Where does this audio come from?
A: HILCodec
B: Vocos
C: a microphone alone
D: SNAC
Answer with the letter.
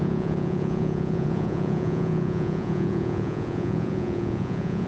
B